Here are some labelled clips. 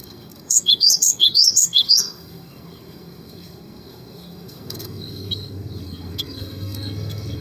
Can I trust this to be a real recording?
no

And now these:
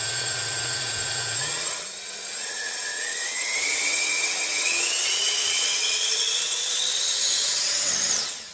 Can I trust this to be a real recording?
no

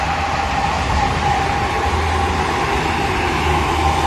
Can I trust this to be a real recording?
yes